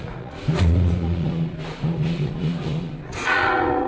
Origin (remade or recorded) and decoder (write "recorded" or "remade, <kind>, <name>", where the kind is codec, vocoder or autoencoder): remade, vocoder, Vocos